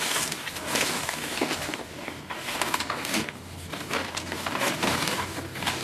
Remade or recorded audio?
remade